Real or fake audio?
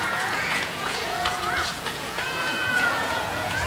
fake